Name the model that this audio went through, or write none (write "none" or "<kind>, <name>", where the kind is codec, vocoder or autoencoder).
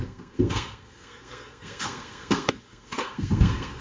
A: codec, SNAC